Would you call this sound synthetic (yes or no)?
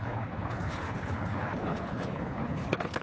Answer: yes